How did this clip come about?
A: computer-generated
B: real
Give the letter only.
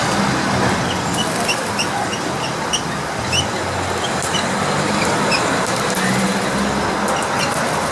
B